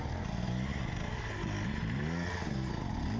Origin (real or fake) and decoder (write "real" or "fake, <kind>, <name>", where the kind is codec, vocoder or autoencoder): real